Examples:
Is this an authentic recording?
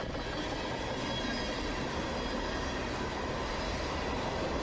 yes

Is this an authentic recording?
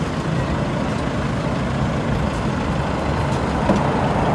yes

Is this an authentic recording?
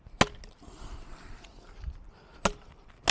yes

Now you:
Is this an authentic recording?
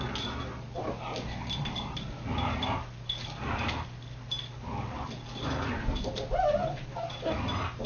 yes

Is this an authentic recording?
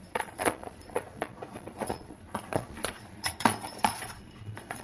no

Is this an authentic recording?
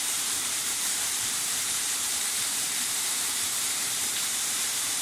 no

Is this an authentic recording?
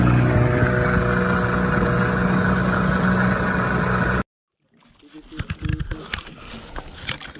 yes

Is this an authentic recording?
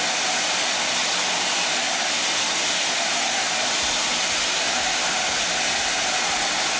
yes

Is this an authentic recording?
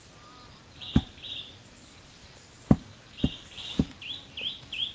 no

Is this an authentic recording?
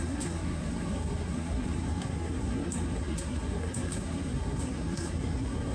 no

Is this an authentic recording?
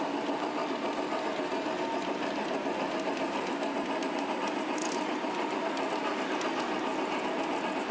yes